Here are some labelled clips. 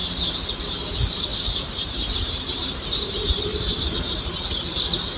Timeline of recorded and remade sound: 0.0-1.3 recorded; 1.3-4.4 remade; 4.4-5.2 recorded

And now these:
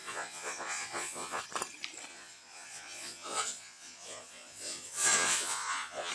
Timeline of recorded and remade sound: 0.0-1.4 remade; 1.4-2.1 recorded; 2.1-6.1 remade

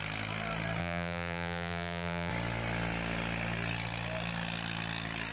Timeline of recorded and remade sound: 0.0-0.8 recorded; 0.8-2.3 remade; 2.3-5.3 recorded

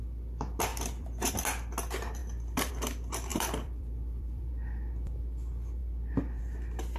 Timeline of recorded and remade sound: 0.0-0.7 recorded; 0.7-1.4 remade; 1.4-2.2 recorded; 2.2-2.7 remade; 2.7-3.3 recorded; 3.3-4.5 remade; 4.5-7.0 recorded

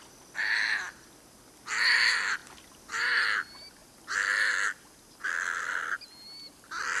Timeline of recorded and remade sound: 0.0-7.0 recorded

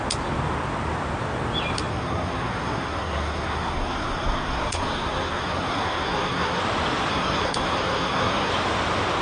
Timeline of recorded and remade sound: 0.0-1.9 recorded; 1.9-6.6 remade; 6.6-7.1 recorded; 7.1-8.5 remade; 8.5-9.2 recorded